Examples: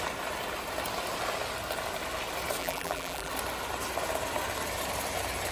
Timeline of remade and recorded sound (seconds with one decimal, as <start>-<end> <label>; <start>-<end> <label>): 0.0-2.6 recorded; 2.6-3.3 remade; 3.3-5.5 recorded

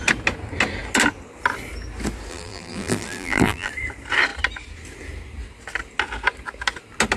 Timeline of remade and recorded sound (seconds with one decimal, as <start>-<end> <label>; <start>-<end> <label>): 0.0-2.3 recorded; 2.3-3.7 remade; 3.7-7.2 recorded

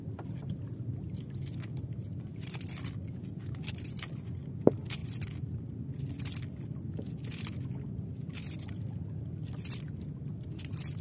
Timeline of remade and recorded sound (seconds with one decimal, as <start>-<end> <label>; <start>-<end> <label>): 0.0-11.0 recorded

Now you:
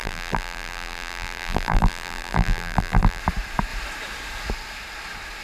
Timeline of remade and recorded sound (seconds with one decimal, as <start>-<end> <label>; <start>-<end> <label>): 0.0-3.2 remade; 3.2-5.4 recorded